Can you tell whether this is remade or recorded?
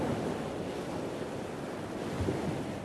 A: recorded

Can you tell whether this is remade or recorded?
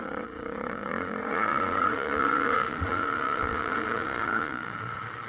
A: remade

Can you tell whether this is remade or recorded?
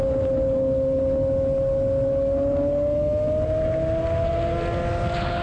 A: recorded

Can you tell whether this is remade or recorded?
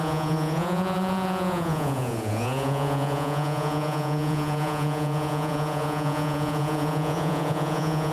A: remade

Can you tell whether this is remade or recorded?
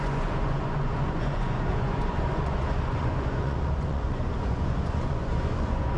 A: remade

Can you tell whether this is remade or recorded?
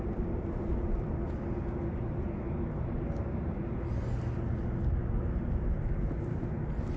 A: recorded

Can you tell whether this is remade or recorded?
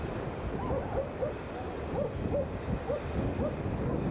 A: recorded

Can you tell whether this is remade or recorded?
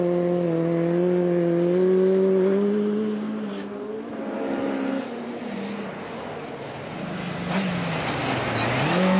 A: recorded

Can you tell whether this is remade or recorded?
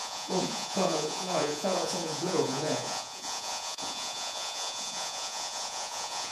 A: remade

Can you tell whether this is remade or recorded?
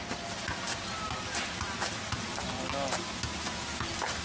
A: recorded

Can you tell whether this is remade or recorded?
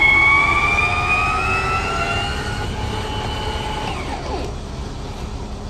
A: recorded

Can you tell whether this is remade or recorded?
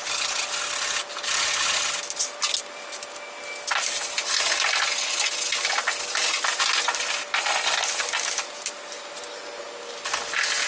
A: recorded